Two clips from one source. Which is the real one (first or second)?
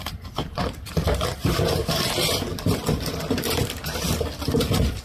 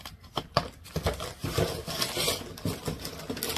second